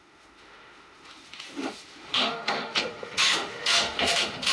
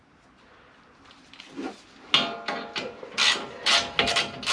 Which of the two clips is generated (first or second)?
first